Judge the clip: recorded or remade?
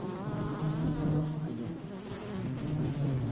recorded